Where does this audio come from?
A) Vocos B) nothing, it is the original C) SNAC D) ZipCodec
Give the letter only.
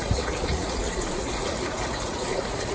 A